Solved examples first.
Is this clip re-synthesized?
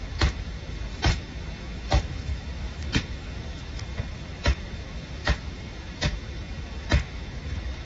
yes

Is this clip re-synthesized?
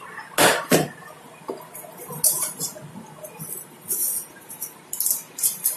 no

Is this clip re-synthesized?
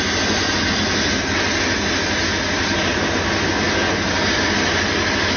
no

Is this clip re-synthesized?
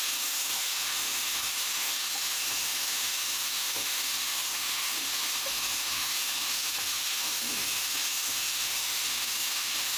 yes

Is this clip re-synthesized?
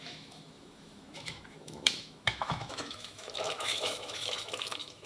yes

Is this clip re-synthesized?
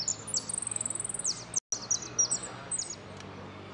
no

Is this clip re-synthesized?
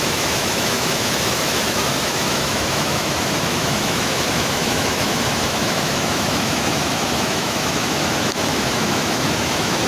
yes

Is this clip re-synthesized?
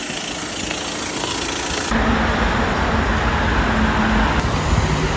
no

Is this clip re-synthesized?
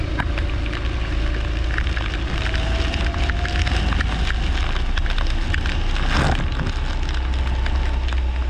no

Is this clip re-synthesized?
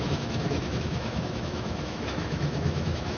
yes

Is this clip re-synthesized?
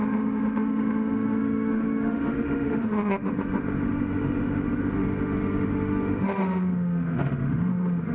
yes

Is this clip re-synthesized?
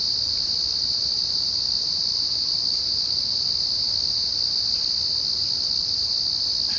no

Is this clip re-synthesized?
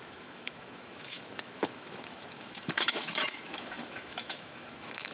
yes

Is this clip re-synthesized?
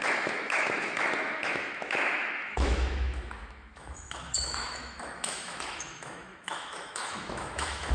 yes